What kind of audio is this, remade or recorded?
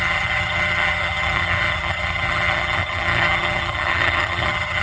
remade